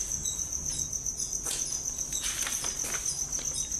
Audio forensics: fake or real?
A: real